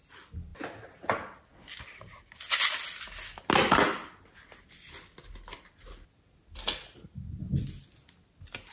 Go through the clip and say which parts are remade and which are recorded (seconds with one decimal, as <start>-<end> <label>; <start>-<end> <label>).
0.0-8.7 recorded